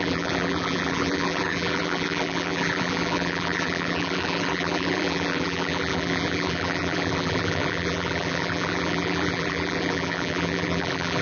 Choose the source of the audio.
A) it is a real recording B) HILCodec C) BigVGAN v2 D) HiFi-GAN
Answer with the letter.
C